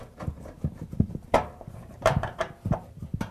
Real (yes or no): no